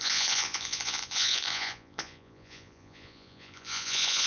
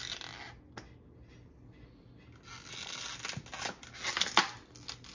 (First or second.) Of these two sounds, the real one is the second